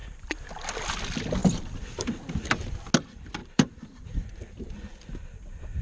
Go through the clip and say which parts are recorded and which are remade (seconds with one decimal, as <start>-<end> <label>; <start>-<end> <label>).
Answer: 0.0-0.5 remade; 0.5-1.4 recorded; 1.4-2.4 remade; 2.4-3.4 recorded; 3.4-4.3 remade; 4.3-5.8 recorded